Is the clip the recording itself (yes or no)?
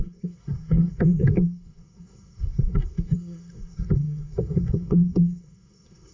no